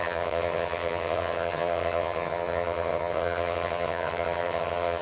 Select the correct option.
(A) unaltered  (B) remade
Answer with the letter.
B